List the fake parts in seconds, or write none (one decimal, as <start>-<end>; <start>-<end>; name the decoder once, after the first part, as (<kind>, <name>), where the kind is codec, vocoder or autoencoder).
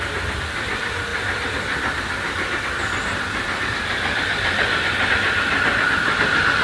none